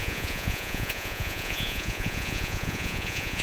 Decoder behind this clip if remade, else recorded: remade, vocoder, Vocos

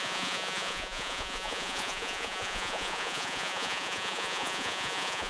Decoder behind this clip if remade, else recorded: remade, vocoder, Vocos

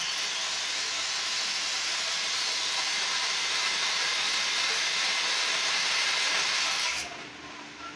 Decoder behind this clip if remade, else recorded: recorded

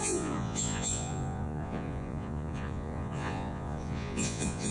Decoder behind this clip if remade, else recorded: remade, vocoder, Vocos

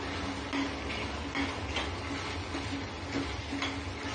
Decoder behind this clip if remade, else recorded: recorded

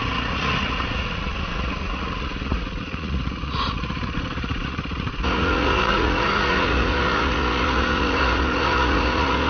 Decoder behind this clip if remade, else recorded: remade, vocoder, Vocos